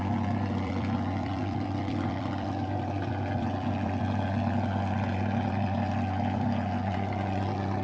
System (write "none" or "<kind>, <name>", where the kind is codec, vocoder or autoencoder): vocoder, BigVGAN v2